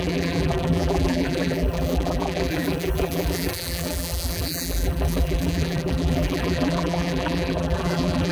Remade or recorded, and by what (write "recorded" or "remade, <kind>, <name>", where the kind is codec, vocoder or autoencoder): remade, vocoder, BigVGAN v2